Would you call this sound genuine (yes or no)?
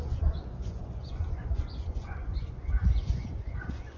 no